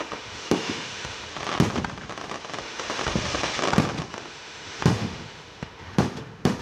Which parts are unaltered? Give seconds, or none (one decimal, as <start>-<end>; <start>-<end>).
1.3-2.6; 3.0-4.1